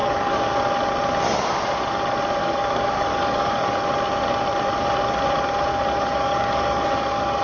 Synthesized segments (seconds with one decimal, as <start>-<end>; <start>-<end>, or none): 0.0-0.6; 2.4-3.8; 5.7-7.4

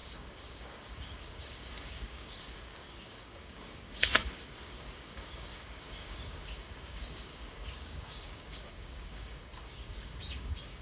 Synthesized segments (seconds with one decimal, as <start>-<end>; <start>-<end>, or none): 0.0-10.8